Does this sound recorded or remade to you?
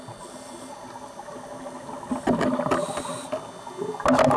recorded